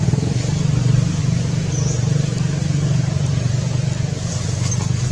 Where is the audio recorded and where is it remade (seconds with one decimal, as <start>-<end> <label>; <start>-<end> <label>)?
0.0-5.1 recorded